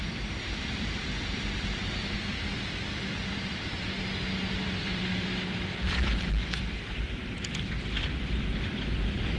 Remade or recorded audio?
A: remade